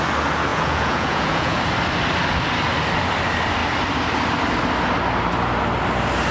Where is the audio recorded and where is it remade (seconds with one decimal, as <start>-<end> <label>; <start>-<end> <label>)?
0.0-0.5 recorded; 0.5-1.6 remade; 1.6-6.3 recorded